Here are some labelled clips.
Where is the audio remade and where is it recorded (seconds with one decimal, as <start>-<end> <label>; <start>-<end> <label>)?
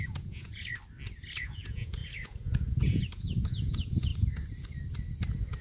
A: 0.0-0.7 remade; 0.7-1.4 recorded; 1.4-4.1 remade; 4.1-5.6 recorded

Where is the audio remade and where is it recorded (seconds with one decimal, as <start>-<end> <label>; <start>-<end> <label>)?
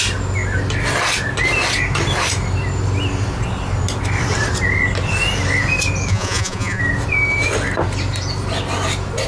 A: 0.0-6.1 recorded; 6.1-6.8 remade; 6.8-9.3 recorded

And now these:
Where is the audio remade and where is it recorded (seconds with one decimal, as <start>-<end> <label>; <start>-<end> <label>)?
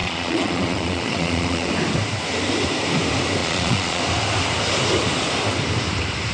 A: 0.0-1.7 remade; 1.7-3.4 recorded; 3.4-4.0 remade; 4.0-6.3 recorded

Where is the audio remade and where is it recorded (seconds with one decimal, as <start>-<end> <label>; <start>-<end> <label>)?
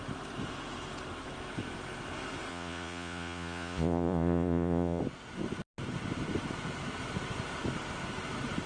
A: 0.0-2.5 recorded; 2.5-5.0 remade; 5.0-8.7 recorded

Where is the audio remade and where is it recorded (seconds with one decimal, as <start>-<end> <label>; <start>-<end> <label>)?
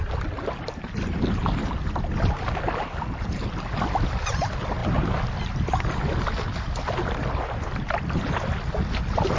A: 0.0-9.4 recorded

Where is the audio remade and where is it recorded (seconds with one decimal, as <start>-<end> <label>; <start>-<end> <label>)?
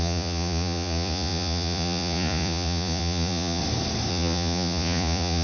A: 0.0-3.6 remade; 3.6-4.1 recorded; 4.1-5.4 remade